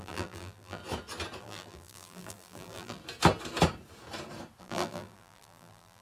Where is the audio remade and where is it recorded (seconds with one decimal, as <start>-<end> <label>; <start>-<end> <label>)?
0.0-0.8 remade; 0.8-1.4 recorded; 1.4-3.0 remade; 3.0-4.6 recorded; 4.6-6.0 remade